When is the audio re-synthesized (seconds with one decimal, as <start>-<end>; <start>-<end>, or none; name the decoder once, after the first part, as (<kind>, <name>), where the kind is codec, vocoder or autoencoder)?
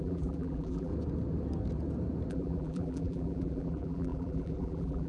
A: 0.0-0.9 (vocoder, BigVGAN v2); 2.3-5.1